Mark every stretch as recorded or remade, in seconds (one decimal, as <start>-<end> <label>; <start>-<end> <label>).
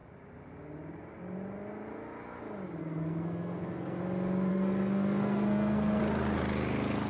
0.0-2.8 recorded; 2.8-4.0 remade; 4.0-4.5 recorded; 4.5-6.0 remade; 6.0-7.1 recorded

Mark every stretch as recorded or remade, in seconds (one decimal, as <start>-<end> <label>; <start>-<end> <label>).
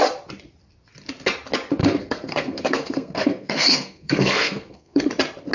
0.0-1.8 recorded; 1.8-5.1 remade; 5.1-5.5 recorded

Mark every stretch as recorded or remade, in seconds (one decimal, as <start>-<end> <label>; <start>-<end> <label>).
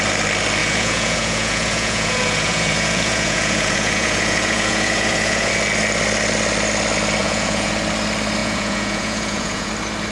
0.0-0.6 recorded; 0.6-5.5 remade; 5.5-7.2 recorded; 7.2-7.7 remade; 7.7-8.4 recorded; 8.4-9.7 remade; 9.7-10.1 recorded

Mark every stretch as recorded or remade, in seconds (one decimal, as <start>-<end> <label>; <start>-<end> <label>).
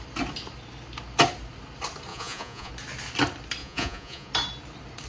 0.0-2.1 recorded; 2.1-2.7 remade; 2.7-3.6 recorded; 3.6-4.3 remade; 4.3-5.1 recorded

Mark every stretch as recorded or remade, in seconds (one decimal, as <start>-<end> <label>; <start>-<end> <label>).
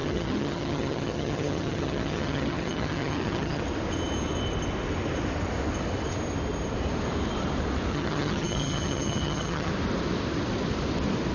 0.0-3.6 remade; 3.6-7.9 recorded; 7.9-9.7 remade; 9.7-11.3 recorded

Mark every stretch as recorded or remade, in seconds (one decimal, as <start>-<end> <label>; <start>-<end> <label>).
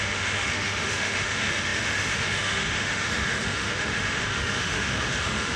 0.0-5.6 remade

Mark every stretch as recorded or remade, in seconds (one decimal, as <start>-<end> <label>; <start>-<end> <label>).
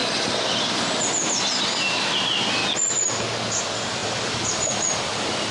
0.0-2.2 recorded; 2.2-2.6 remade; 2.6-3.5 recorded; 3.5-5.5 remade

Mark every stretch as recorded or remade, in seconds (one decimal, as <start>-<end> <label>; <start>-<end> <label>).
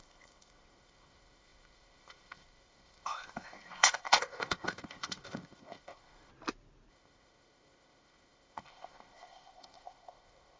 0.0-6.3 remade; 6.3-6.9 recorded; 6.9-10.6 remade